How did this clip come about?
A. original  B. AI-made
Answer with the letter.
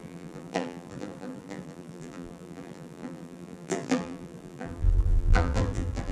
B